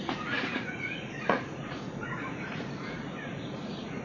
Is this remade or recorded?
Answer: remade